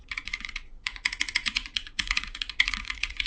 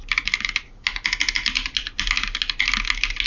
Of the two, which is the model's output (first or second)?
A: first